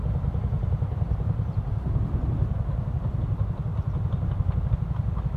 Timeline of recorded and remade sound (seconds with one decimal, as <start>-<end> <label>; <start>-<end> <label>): 0.0-5.4 recorded